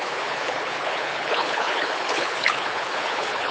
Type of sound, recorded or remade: remade